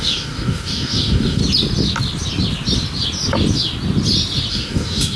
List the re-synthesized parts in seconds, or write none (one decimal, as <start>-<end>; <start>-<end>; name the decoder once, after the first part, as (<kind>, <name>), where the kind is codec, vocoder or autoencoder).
0.0-1.4 (codec, DAC); 4.5-5.2